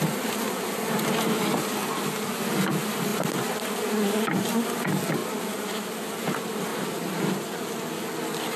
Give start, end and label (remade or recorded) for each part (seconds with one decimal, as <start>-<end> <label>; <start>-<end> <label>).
0.0-3.1 recorded; 3.1-3.7 remade; 3.7-5.2 recorded; 5.2-6.1 remade; 6.1-8.6 recorded